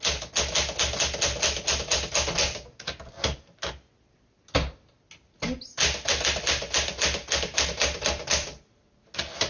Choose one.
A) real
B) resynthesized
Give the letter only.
A